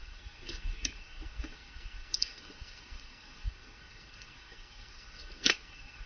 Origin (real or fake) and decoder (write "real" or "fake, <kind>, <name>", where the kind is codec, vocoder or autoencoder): fake, codec, SNAC